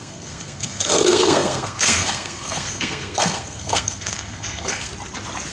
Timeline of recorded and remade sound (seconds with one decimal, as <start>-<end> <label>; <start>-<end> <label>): 0.0-4.9 remade; 4.9-5.5 recorded